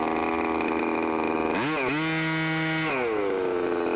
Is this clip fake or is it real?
real